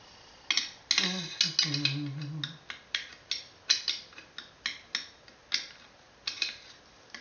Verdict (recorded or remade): recorded